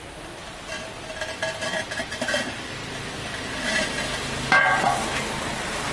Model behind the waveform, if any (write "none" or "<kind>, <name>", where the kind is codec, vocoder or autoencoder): none